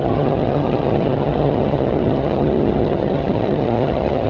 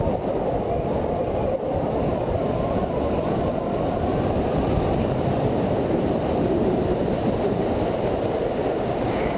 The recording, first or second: second